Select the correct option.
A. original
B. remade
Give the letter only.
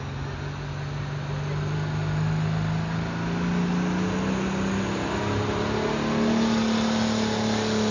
A